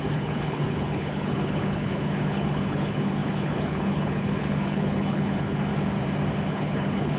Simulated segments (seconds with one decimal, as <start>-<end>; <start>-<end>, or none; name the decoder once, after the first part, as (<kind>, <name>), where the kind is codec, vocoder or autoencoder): 0.0-5.7 (codec, HILCodec); 6.5-7.2